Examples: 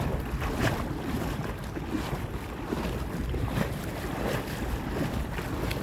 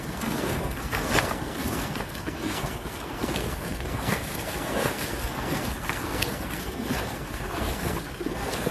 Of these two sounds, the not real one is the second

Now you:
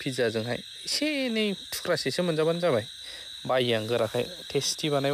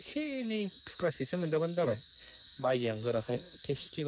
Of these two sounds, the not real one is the second